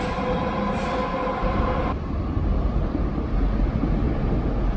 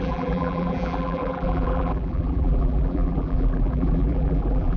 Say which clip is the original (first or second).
first